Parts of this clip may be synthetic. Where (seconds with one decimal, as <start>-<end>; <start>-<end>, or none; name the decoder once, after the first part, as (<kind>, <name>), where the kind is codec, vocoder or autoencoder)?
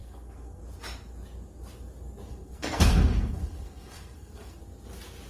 0.0-0.6 (codec, SNAC); 2.3-4.6